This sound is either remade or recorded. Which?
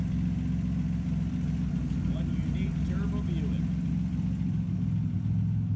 recorded